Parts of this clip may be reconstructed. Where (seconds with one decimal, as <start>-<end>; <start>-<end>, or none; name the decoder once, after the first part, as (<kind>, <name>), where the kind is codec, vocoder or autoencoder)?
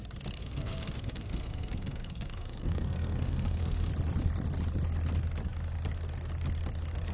0.4-3.9 (codec, SNAC)